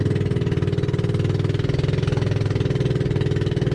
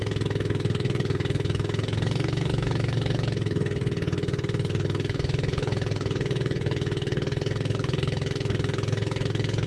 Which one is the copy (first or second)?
second